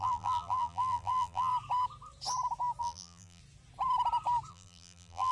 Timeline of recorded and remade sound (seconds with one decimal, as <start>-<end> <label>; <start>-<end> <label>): 0.0-1.5 remade; 1.5-2.8 recorded; 2.8-3.4 remade; 3.4-4.5 recorded; 4.5-5.3 remade